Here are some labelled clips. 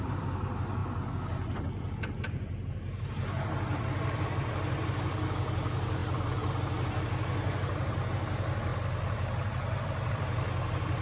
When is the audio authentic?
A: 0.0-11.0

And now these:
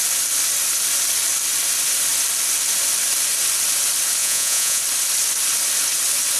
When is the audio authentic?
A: 0.0-4.2; 4.8-6.4

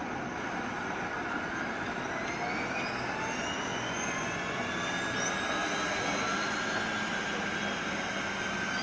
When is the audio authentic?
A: 0.0-3.7; 4.7-8.8

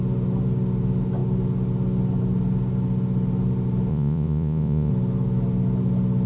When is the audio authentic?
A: 0.0-3.9; 4.9-6.3

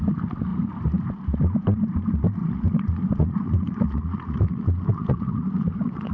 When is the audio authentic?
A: 0.0-2.4